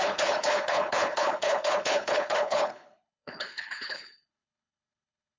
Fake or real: fake